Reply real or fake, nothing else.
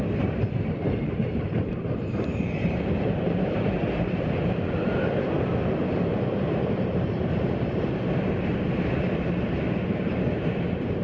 fake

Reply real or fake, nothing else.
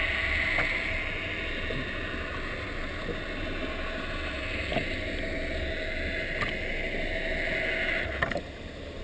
real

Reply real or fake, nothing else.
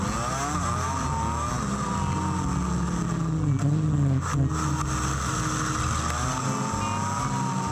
real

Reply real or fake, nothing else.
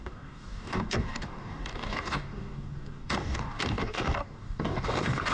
fake